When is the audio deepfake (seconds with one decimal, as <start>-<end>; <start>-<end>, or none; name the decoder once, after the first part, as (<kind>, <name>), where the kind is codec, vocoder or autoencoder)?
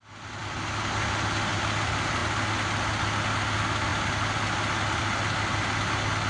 none